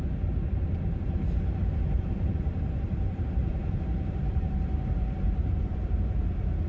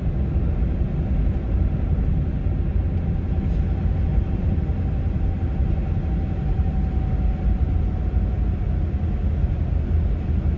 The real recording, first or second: second